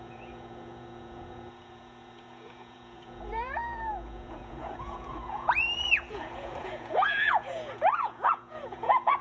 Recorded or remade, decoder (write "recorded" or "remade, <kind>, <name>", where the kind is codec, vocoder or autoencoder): remade, vocoder, Vocos